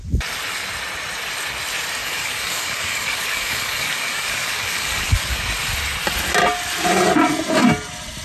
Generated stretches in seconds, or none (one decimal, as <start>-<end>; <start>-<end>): 2.0-5.4